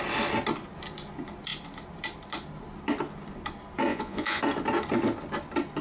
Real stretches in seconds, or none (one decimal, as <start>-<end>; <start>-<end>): 0.0-3.9; 4.4-5.8